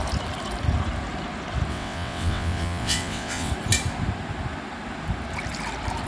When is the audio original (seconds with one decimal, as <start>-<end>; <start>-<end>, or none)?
0.0-1.7; 3.5-6.1

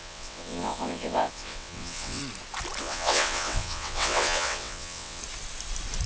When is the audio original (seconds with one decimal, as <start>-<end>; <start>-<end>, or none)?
2.2-2.8; 5.2-6.1

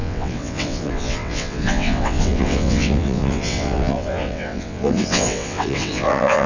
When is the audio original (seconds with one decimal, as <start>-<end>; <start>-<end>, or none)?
none

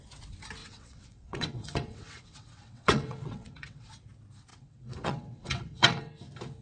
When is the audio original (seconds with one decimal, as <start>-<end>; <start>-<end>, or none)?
0.0-0.6; 3.9-4.5; 6.1-6.6

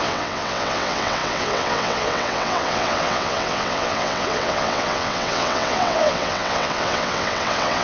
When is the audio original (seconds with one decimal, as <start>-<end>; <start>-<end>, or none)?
none